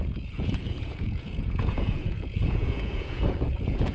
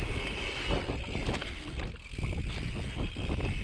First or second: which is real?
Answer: second